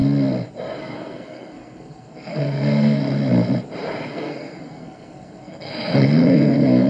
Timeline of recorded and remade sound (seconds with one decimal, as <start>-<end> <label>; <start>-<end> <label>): 0.0-0.8 recorded; 0.8-3.0 remade; 3.0-4.1 recorded; 4.1-6.9 remade